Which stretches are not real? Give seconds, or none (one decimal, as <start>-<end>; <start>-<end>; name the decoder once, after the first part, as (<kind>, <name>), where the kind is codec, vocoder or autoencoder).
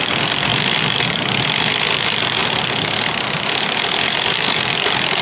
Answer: none